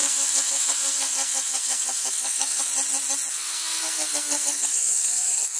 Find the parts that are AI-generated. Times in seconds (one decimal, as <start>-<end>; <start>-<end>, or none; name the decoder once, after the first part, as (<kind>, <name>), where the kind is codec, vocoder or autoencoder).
0.0-2.7 (codec, SNAC); 3.3-5.6